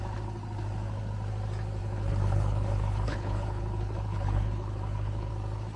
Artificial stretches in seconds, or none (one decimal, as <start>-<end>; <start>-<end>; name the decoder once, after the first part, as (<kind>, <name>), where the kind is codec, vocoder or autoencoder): 1.8-5.3 (codec, HILCodec)